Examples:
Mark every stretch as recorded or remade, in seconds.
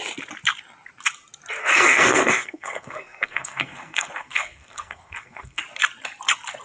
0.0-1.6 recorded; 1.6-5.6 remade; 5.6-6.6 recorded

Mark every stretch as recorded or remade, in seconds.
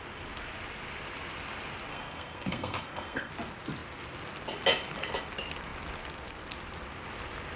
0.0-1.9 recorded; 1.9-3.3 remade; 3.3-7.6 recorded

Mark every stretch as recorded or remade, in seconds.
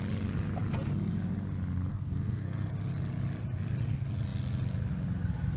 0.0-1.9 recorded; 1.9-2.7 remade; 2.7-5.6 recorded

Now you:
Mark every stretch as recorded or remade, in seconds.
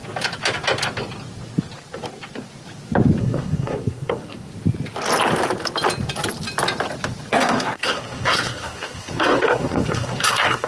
0.0-3.2 recorded; 3.2-4.5 remade; 4.5-7.3 recorded; 7.3-10.7 remade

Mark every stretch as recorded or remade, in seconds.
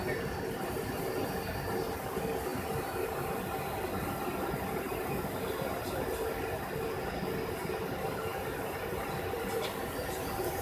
0.0-10.6 recorded